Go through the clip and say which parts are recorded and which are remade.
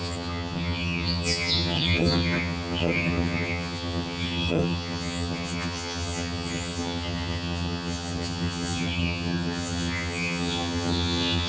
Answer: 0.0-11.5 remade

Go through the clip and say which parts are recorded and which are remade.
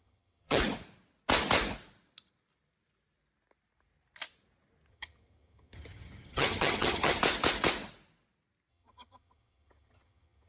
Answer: 0.0-0.6 remade; 0.6-4.9 recorded; 4.9-7.2 remade; 7.2-8.7 recorded; 8.7-10.5 remade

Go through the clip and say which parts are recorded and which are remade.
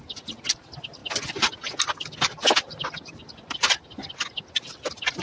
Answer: 0.0-5.2 recorded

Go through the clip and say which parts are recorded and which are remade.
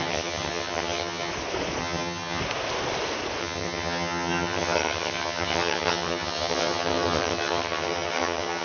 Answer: 0.0-1.3 remade; 1.3-1.8 recorded; 1.8-2.4 remade; 2.4-3.4 recorded; 3.4-8.6 remade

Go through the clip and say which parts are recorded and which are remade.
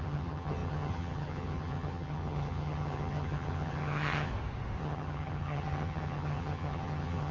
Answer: 0.0-4.3 remade; 4.3-4.8 recorded; 4.8-7.3 remade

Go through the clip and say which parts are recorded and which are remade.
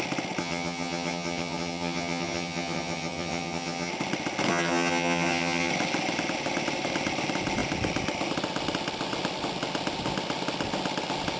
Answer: 0.0-0.4 recorded; 0.4-3.9 remade; 3.9-4.5 recorded; 4.5-5.7 remade; 5.7-11.4 recorded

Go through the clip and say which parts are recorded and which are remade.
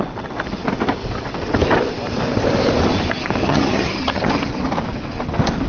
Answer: 0.0-3.4 recorded; 3.4-4.3 remade; 4.3-5.7 recorded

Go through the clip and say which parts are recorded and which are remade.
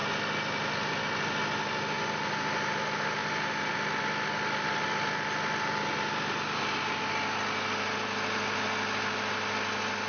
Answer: 0.0-10.1 recorded